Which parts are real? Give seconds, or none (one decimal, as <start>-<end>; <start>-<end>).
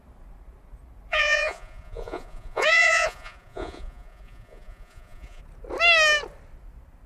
0.0-1.1; 5.4-7.1